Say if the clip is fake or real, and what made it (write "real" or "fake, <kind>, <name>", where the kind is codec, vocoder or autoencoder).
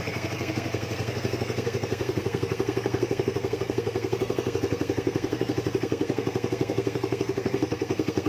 fake, codec, SNAC